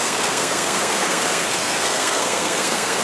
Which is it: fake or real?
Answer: fake